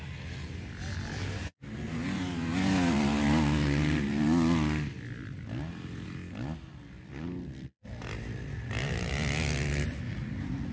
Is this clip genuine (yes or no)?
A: yes